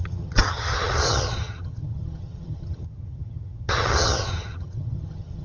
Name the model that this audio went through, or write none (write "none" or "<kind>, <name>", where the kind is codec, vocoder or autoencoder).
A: vocoder, HiFi-GAN